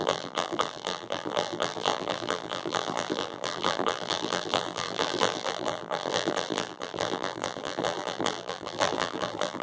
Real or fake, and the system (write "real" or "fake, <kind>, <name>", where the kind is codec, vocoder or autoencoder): fake, vocoder, BigVGAN v2